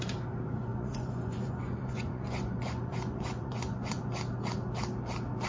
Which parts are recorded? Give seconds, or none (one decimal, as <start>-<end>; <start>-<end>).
0.0-0.7; 4.0-5.5